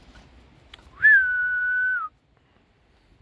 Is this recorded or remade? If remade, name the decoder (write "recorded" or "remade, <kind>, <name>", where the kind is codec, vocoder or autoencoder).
recorded